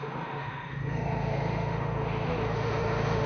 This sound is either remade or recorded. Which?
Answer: remade